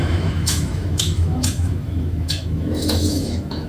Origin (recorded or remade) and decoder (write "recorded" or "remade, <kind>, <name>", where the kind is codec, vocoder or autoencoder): remade, autoencoder, DAC-VAE